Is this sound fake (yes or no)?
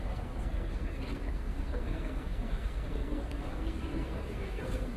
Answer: yes